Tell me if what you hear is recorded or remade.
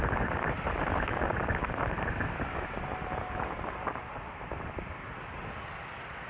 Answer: recorded